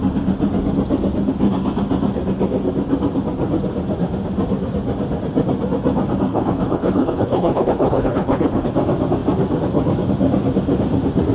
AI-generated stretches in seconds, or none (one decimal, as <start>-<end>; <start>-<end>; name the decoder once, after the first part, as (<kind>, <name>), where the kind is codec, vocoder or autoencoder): 6.3-8.7 (codec, HILCodec)